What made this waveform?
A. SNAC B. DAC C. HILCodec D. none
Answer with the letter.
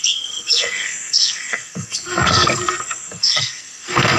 A